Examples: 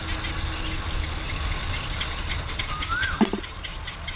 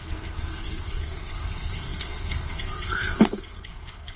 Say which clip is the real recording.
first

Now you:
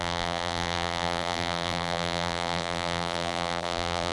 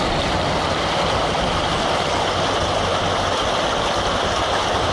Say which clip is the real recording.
second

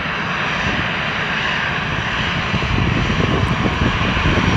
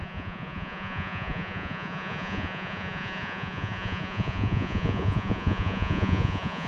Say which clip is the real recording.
first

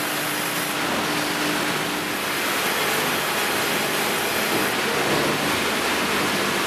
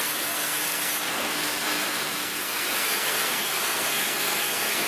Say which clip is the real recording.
first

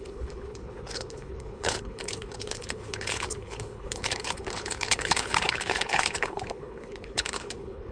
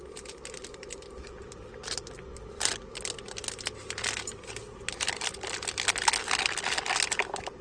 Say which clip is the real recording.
second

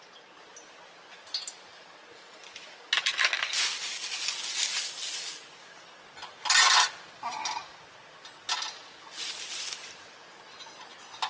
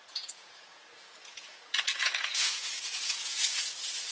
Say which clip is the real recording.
first